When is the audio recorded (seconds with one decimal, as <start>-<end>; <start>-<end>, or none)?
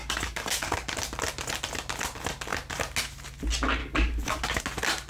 0.9-3.8; 4.6-5.1